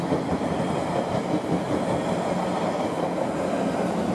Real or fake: real